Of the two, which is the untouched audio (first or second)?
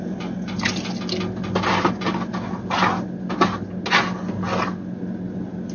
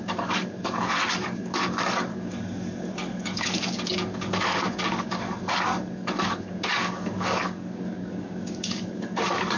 first